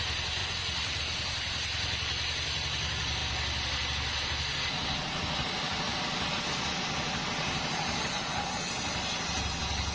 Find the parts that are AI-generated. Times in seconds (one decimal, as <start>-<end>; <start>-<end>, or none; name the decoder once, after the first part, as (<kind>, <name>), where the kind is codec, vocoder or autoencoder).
0.4-1.0 (vocoder, Vocos)